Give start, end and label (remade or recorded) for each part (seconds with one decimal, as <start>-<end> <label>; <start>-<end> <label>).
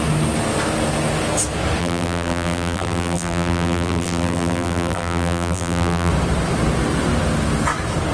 0.0-1.8 recorded; 1.8-6.1 remade; 6.1-8.1 recorded